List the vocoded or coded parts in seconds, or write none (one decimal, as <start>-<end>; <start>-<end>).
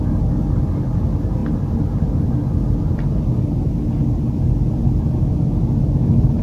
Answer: none